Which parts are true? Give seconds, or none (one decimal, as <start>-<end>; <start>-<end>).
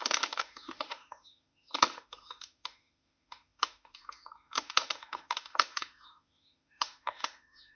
none